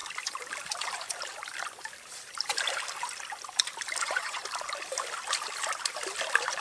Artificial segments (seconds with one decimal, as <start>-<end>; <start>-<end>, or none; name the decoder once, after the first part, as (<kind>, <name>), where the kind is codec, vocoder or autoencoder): 4.0-4.4 (vocoder, Vocos)